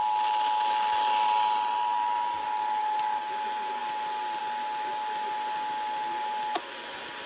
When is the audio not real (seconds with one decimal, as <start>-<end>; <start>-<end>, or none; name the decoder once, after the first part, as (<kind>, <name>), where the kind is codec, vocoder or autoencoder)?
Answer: none